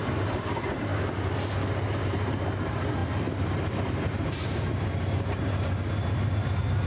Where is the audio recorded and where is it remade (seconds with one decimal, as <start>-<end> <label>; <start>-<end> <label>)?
0.0-0.9 remade; 0.9-1.6 recorded; 1.6-6.9 remade

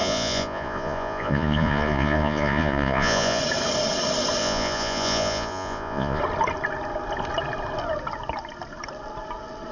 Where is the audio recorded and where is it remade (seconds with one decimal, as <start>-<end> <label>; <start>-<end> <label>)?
0.0-3.4 remade; 3.4-4.4 recorded; 4.4-6.2 remade; 6.2-9.7 recorded

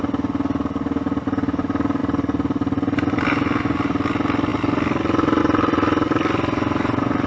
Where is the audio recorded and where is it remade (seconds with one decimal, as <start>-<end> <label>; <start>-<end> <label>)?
0.0-7.3 recorded

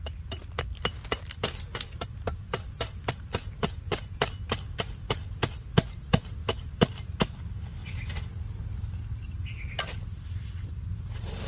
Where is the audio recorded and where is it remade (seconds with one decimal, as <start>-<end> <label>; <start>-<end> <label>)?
0.0-11.5 recorded

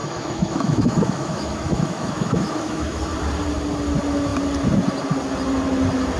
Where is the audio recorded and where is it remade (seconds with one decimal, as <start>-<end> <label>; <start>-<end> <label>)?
0.0-3.0 remade; 3.0-6.2 recorded

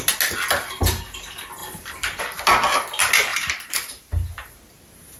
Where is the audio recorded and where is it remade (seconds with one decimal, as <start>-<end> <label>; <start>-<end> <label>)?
0.0-3.3 recorded; 3.3-4.1 remade; 4.1-5.2 recorded